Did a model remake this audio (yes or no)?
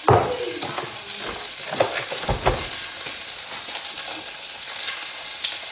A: no